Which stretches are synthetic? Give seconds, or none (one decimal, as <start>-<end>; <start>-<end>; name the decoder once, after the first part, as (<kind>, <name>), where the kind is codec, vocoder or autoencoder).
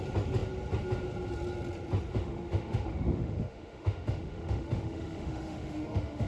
2.1-6.3 (autoencoder, DAC-VAE)